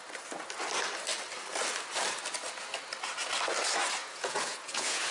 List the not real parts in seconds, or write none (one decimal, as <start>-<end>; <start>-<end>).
4.0-5.1